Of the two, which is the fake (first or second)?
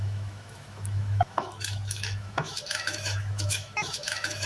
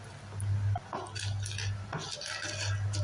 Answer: first